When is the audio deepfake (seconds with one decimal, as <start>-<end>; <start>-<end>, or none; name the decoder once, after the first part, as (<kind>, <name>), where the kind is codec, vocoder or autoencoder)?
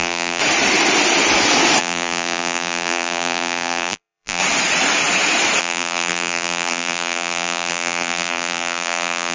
0.0-0.4 (vocoder, BigVGAN v2); 1.8-4.4; 5.6-9.3